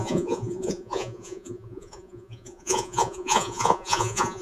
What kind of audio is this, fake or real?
fake